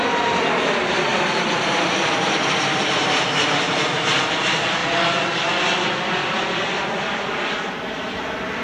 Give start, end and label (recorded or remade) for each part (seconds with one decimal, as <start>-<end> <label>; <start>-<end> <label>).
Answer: 0.0-1.1 recorded; 1.1-2.9 remade; 2.9-8.6 recorded

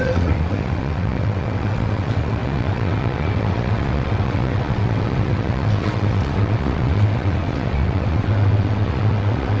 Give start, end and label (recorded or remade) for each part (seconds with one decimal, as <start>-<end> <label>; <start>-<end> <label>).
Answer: 0.0-9.6 remade